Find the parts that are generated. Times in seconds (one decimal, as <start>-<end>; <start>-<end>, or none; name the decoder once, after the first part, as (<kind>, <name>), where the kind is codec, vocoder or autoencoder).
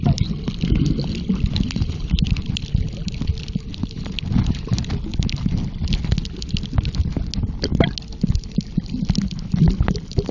3.7-4.9 (vocoder, BigVGAN v2)